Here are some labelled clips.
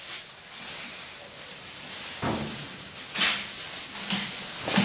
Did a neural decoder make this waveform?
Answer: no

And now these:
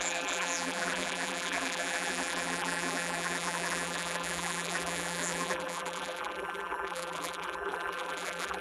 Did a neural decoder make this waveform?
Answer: yes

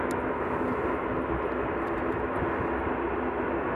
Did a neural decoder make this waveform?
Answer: no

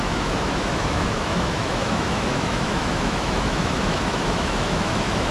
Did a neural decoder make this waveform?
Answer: yes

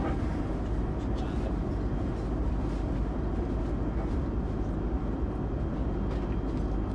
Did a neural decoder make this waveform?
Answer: no